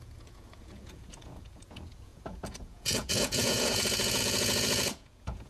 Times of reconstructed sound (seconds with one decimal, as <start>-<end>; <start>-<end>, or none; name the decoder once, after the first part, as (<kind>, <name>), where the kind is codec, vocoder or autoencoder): 0.0-5.5 (vocoder, Vocos)